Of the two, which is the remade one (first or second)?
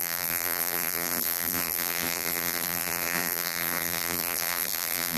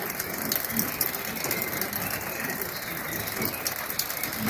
first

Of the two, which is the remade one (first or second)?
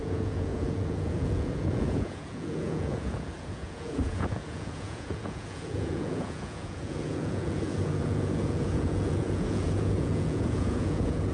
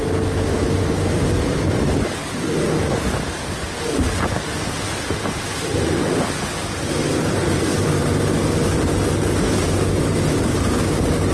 first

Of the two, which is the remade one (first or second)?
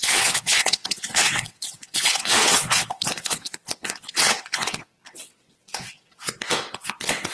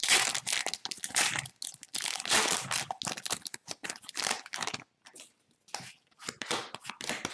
first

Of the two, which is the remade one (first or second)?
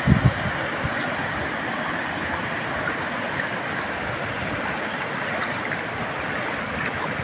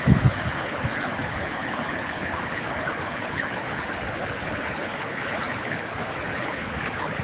second